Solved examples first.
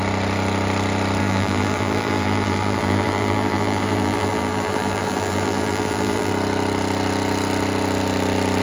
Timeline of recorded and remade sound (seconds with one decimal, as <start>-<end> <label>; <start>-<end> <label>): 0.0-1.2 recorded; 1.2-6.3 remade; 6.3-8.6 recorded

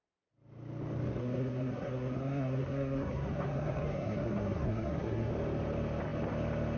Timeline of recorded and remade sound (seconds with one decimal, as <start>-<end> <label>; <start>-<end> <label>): 0.0-1.2 recorded; 1.2-5.3 remade; 5.3-6.8 recorded

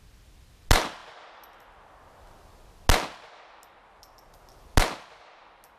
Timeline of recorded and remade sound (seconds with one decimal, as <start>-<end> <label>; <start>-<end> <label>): 0.0-5.8 recorded